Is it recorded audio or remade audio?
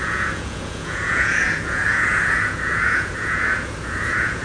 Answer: remade